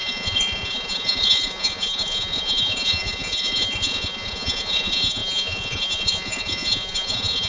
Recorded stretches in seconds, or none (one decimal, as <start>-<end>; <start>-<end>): none